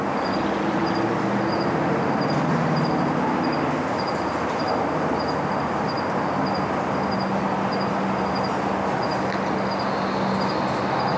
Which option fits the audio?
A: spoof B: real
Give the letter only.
B